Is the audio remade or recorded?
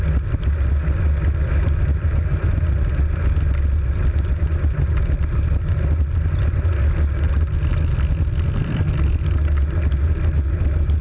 recorded